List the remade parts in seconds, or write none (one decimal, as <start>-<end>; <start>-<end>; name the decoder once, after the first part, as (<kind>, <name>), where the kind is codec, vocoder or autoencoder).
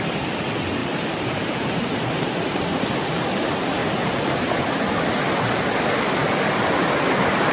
0.8-2.6 (vocoder, BigVGAN v2); 3.8-4.4